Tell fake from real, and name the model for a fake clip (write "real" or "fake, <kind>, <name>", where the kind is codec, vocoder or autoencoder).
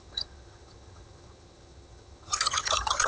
fake, vocoder, HiFi-GAN